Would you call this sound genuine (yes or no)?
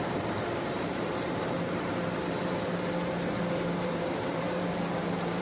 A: no